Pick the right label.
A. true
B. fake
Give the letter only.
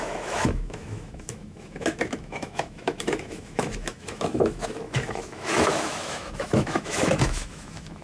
B